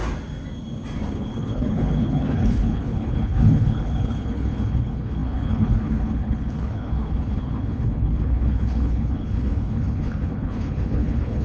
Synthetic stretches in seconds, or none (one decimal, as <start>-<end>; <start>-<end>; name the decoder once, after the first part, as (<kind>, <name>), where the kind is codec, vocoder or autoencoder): 1.1-11.4 (codec, HILCodec)